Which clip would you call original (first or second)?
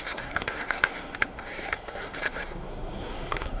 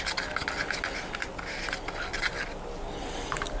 second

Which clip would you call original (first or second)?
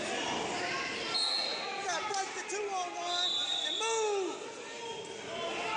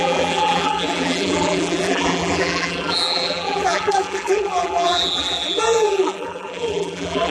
first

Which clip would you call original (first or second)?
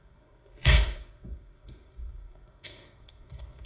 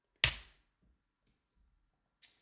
second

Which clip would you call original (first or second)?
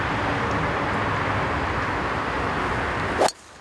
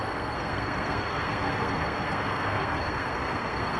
first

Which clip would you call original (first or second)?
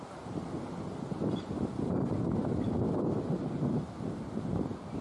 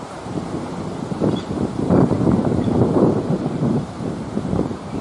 first